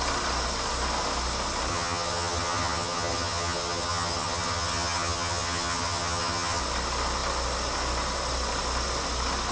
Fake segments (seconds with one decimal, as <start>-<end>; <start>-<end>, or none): 1.7-6.6